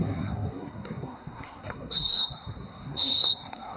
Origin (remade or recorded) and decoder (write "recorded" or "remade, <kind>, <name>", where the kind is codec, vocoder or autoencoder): remade, codec, SNAC